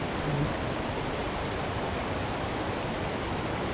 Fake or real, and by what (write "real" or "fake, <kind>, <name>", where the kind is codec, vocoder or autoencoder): real